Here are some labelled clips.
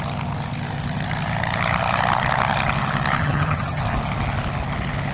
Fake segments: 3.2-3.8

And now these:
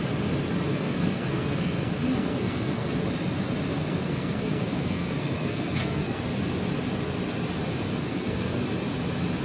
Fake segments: 0.7-3.0; 3.7-6.2; 7.9-8.6

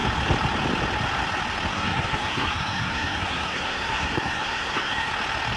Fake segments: 1.7-5.1

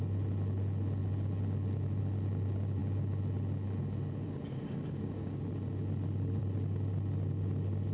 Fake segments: none

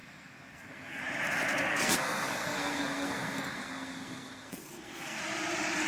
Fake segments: 0.0-1.0; 1.7-5.2